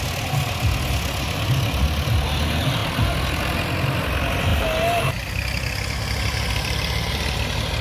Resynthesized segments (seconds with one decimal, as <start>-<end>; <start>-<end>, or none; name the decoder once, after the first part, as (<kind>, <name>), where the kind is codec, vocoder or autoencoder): none